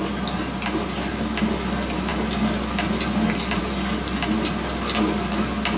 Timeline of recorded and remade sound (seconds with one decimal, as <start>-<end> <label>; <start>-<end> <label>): 0.0-5.8 recorded